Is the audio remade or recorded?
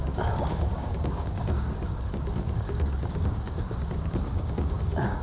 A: remade